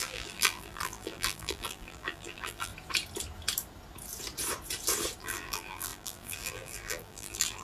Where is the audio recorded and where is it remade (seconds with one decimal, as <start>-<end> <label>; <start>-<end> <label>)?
0.0-2.7 remade; 2.7-5.2 recorded; 5.2-7.6 remade